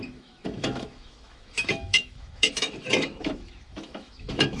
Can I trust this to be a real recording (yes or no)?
no